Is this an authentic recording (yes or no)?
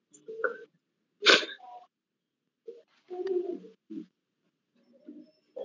yes